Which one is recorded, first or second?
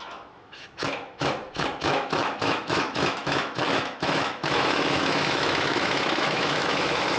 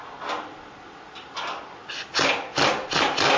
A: second